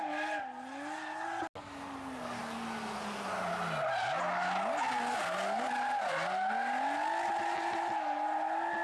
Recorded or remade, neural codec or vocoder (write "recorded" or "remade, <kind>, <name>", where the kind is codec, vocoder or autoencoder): recorded